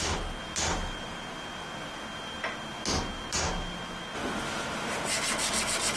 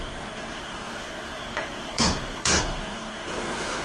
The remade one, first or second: second